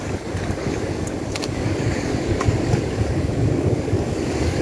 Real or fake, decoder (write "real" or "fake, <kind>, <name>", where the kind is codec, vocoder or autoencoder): fake, codec, DAC